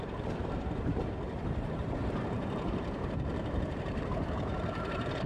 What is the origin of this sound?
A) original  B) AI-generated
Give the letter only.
B